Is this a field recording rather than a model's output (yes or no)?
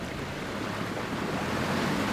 yes